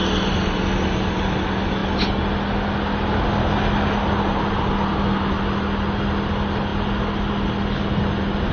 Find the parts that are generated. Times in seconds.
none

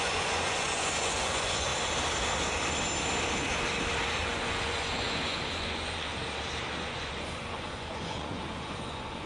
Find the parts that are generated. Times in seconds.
0.0-1.7 (vocoder, Vocos); 4.3-6.1; 6.8-9.3

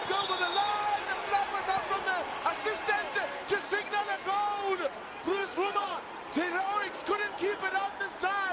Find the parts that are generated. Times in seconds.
5.4-6.2 (vocoder, Vocos)